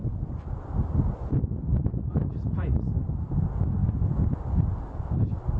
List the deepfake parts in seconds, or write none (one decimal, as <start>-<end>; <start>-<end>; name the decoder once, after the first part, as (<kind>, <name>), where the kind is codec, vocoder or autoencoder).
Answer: 1.9-2.9 (vocoder, Vocos)